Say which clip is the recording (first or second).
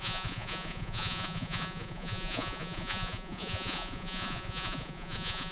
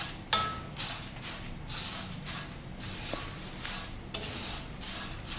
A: second